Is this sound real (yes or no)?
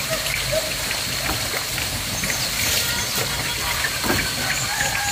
no